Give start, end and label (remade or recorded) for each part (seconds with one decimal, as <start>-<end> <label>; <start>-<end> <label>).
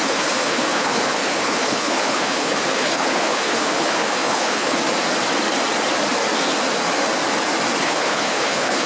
0.0-4.8 remade; 4.8-7.8 recorded; 7.8-8.9 remade